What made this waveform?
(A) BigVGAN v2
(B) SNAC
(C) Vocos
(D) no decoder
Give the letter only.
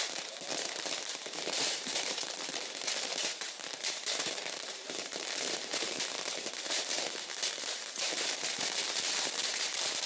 A